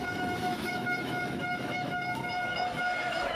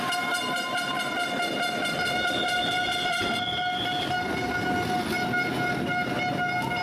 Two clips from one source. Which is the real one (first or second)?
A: second